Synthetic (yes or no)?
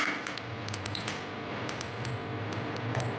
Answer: no